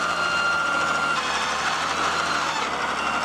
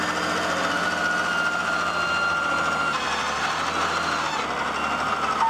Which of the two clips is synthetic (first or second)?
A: first